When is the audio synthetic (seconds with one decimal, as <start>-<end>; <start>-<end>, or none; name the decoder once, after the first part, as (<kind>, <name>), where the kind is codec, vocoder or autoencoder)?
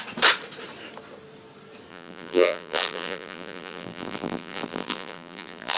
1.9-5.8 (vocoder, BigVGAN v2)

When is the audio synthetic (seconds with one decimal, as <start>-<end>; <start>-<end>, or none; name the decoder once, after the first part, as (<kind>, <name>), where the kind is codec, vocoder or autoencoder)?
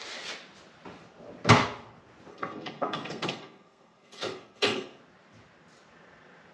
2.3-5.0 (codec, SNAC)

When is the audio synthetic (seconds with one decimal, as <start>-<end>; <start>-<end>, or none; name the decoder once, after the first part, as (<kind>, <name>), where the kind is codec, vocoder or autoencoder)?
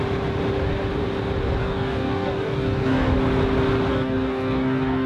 1.6-3.1 (codec, DAC); 3.9-5.1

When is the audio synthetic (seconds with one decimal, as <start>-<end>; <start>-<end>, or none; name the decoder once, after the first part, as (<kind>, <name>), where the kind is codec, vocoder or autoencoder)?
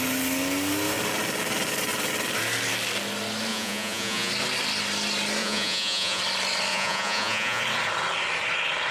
3.5-4.3 (vocoder, Vocos); 5.4-6.2; 6.7-7.6